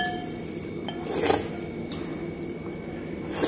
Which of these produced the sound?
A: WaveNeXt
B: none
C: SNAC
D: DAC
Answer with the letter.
B